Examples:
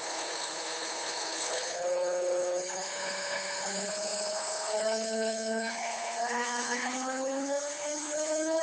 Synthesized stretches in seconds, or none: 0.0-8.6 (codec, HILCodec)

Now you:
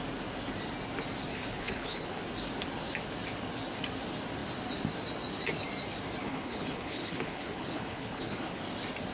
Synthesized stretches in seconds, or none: 1.3-2.2 (codec, HILCodec); 6.2-8.6